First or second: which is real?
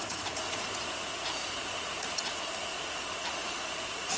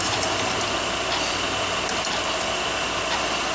second